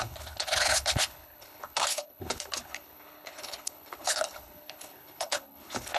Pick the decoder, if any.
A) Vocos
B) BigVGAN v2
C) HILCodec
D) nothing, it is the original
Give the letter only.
C